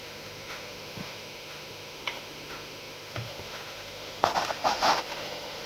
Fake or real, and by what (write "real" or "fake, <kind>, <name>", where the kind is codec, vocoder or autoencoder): fake, autoencoder, DAC-VAE